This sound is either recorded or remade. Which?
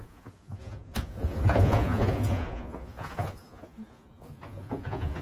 remade